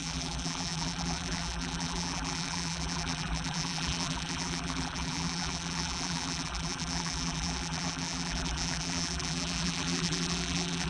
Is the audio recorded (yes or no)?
no